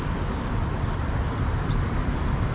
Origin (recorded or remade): recorded